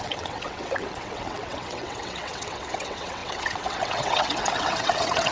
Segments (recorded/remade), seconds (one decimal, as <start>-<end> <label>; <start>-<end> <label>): 0.0-5.3 remade